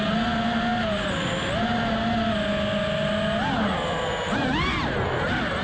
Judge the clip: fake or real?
real